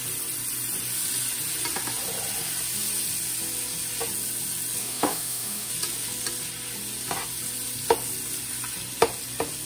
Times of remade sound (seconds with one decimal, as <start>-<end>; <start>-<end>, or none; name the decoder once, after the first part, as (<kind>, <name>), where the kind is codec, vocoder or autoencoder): 4.8-5.7 (autoencoder, DAC-VAE)